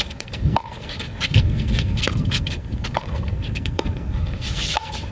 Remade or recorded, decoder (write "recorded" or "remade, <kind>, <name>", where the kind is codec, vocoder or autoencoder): remade, codec, SNAC